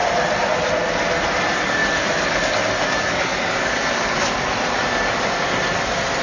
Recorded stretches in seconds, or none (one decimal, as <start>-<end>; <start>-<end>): 0.0-3.0; 3.7-6.2